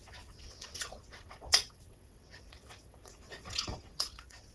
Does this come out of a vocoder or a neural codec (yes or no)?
yes